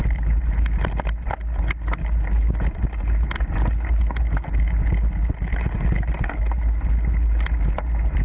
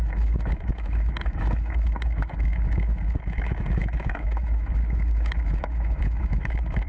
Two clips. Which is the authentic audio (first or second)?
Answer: first